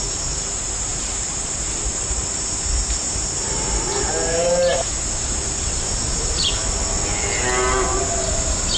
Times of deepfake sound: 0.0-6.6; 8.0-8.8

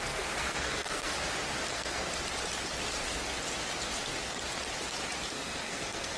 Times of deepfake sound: 0.0-1.1; 1.7-2.1; 5.3-6.2

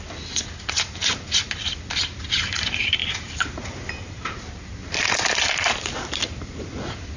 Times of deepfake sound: none

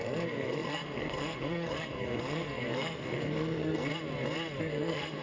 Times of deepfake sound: 0.0-3.9; 4.6-5.2

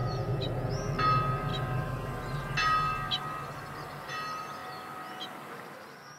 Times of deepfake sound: 0.0-0.7

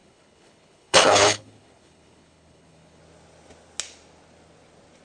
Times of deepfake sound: 0.0-3.0

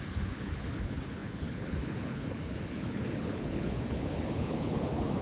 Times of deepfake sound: 0.0-5.2

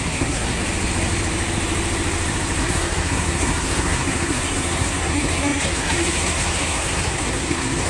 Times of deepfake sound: 0.0-0.6; 2.6-7.9